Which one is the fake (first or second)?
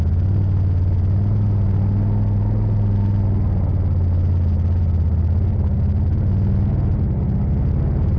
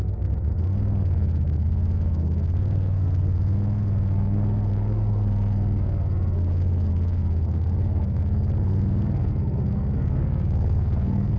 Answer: second